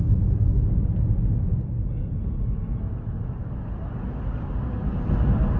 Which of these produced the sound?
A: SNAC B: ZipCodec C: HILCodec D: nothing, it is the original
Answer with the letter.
D